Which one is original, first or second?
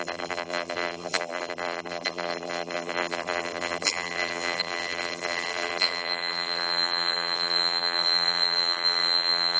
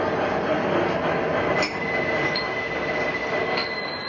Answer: second